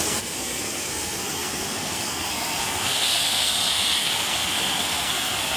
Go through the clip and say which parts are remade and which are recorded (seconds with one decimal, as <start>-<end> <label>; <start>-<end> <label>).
0.0-5.6 remade